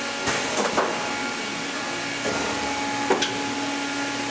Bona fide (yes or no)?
yes